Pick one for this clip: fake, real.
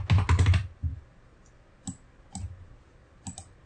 real